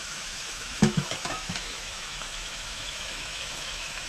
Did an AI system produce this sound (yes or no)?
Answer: yes